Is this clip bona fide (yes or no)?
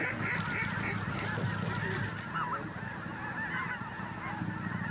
yes